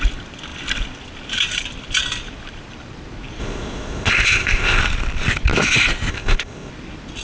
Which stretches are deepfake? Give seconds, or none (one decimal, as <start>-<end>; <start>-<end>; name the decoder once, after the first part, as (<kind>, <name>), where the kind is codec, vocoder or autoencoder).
3.4-4.8 (codec, ZipCodec); 6.1-6.7

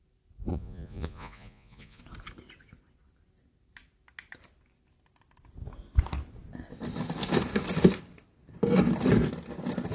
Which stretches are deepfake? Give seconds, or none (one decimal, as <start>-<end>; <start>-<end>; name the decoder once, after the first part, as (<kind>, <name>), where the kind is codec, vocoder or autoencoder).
0.5-2.0 (vocoder, Vocos)

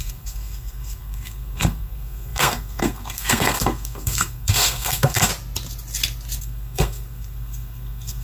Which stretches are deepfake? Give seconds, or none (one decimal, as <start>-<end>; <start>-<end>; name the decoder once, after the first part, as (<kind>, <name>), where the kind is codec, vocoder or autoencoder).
0.0-5.3 (codec, SNAC); 6.4-8.2